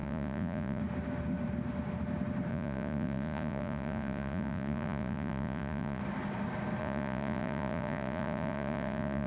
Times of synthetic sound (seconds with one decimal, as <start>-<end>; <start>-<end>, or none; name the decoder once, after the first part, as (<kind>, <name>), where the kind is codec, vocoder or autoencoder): 0.0-0.8 (vocoder, Vocos); 2.5-6.0; 6.8-9.3